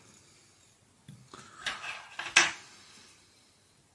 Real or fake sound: real